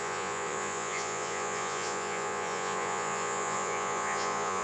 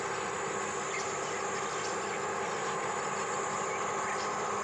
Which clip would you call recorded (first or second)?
second